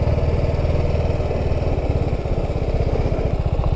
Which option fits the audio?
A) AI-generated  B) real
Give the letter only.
B